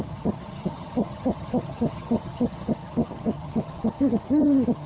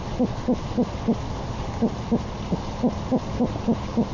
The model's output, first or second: first